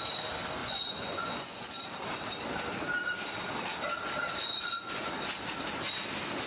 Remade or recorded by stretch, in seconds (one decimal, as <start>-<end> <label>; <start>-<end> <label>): 0.0-0.6 recorded; 0.6-1.7 remade; 1.7-4.4 recorded; 4.4-5.1 remade; 5.1-6.5 recorded